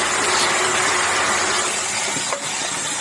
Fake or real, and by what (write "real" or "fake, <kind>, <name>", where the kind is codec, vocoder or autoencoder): real